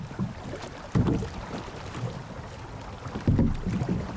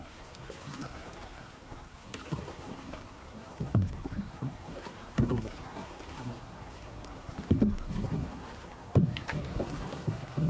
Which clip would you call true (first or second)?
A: first